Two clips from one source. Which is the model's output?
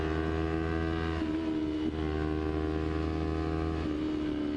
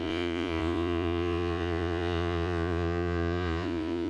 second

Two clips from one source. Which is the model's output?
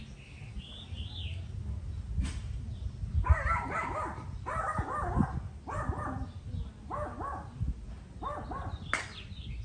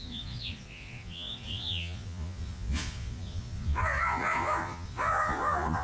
second